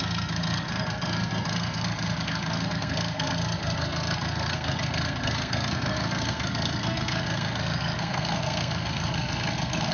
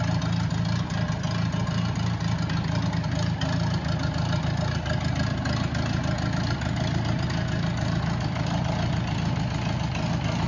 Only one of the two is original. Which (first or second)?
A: second